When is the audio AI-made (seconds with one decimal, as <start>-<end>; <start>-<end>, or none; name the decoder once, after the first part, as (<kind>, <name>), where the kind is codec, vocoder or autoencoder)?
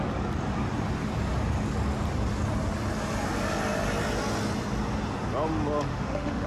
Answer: 5.9-6.5 (autoencoder, DAC-VAE)